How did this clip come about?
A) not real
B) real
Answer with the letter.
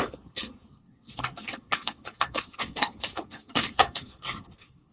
A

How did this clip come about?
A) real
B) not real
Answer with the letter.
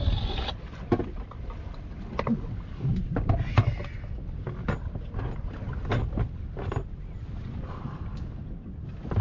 A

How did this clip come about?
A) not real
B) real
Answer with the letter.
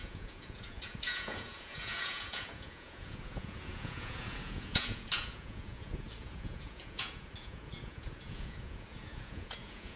A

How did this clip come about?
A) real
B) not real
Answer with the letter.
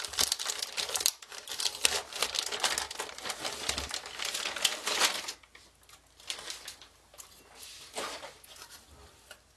A